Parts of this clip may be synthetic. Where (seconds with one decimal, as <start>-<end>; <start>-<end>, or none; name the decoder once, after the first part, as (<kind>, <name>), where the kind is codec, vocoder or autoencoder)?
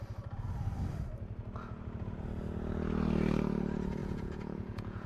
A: 4.0-5.1 (vocoder, Vocos)